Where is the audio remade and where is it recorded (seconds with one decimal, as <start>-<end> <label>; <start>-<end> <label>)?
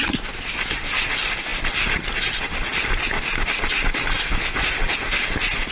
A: 0.0-5.7 recorded